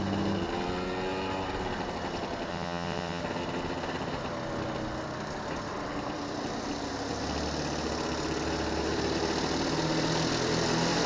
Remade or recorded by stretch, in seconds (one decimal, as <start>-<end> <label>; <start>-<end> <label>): 0.0-2.5 recorded; 2.5-3.2 remade; 3.2-11.1 recorded